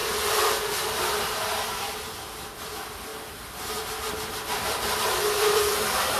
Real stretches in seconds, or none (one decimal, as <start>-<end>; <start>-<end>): 0.0-2.6; 3.1-4.5